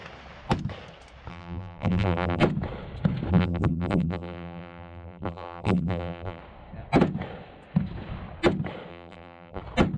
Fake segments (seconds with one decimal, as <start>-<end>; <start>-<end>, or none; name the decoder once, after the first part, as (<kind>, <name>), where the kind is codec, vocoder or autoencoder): 1.3-2.4 (vocoder, BigVGAN v2); 3.3-6.4; 8.9-9.6

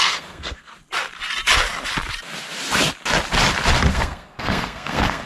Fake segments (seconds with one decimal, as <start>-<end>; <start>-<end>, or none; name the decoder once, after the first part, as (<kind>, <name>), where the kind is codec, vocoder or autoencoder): 0.0-0.7 (codec, SNAC); 3.9-5.3

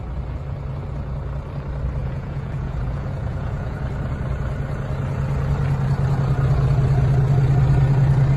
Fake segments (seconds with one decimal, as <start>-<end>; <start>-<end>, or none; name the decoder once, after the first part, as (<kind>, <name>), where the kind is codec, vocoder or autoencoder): 2.0-3.8 (vocoder, Vocos)

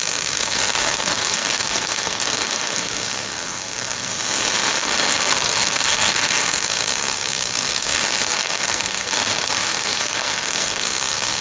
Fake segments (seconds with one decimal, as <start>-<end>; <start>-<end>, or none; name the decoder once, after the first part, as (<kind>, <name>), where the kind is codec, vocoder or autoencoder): 0.0-4.1 (codec, SNAC); 4.8-11.4